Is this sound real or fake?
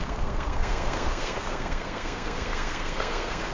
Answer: fake